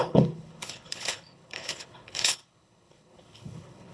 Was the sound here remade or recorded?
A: remade